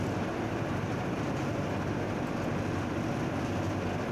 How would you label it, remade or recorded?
remade